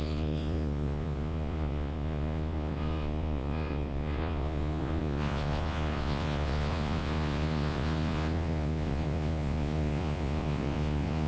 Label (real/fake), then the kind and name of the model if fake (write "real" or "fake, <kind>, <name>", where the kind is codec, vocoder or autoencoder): fake, vocoder, Vocos